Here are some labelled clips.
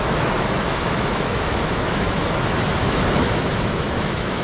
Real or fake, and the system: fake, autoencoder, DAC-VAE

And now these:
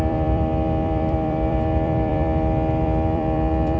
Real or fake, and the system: fake, vocoder, BigVGAN v2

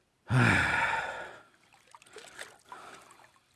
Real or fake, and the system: real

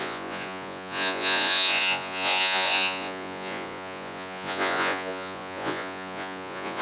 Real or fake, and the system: fake, vocoder, Vocos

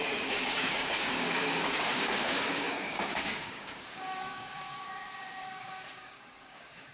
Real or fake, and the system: fake, codec, DAC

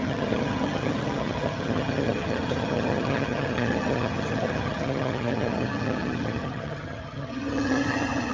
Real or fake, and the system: fake, vocoder, HiFi-GAN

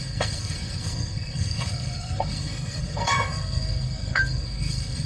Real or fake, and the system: fake, codec, SNAC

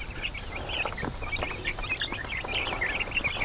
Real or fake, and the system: real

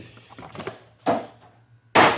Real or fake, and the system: real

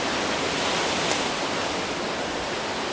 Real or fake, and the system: real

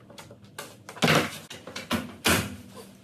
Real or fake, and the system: real